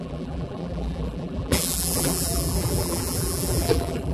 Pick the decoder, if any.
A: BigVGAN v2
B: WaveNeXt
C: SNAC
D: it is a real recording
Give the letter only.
A